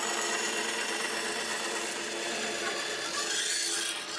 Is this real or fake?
real